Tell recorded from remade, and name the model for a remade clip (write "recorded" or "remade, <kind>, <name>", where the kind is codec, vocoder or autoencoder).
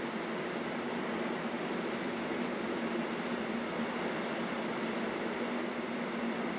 recorded